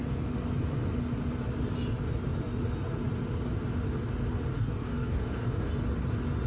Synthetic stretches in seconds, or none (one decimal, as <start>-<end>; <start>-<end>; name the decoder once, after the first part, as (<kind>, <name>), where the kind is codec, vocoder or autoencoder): 4.5-5.7 (codec, DAC)

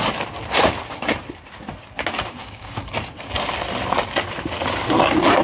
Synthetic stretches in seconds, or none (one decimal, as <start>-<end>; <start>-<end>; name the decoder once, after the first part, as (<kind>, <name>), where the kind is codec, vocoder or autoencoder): 2.4-2.9 (codec, DAC)

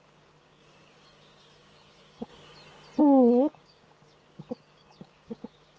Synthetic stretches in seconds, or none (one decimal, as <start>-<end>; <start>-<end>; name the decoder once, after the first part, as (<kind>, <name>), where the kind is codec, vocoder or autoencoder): 0.0-2.3 (codec, DAC); 3.0-5.8

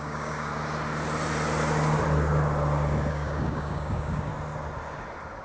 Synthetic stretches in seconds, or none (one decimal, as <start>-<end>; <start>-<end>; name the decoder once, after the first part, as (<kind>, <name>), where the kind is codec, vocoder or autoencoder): 0.0-0.5 (codec, DAC); 3.1-4.3

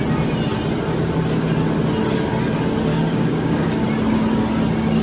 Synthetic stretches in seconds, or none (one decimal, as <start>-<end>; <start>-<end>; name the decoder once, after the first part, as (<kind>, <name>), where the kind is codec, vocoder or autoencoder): 2.9-3.8 (codec, DAC)